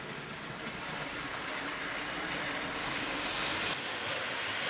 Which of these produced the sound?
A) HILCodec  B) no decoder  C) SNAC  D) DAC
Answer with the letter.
B